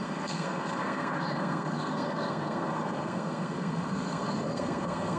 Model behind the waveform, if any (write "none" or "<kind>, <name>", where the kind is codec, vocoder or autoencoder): codec, SNAC